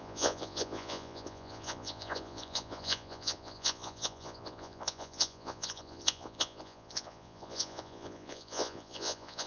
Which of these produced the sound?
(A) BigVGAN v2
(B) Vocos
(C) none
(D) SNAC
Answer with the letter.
B